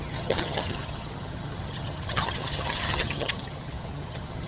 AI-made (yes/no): yes